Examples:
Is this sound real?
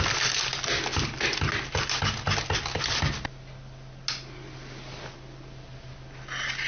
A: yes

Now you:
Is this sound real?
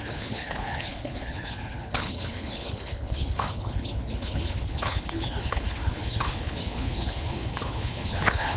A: no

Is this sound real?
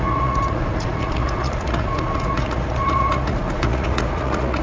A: no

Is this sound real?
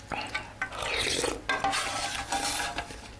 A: yes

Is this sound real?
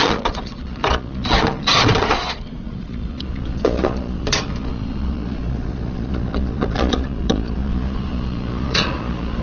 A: no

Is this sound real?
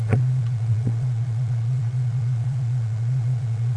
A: no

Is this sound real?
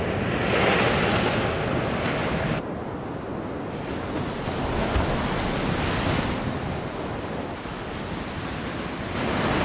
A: yes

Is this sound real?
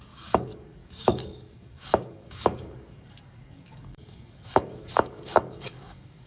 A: no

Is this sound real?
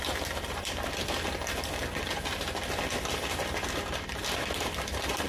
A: yes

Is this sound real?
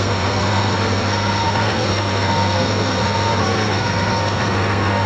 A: no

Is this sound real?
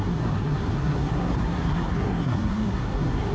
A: no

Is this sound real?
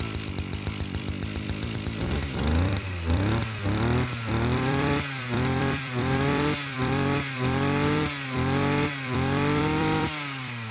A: no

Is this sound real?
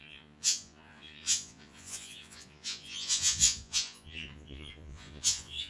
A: no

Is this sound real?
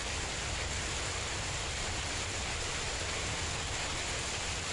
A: no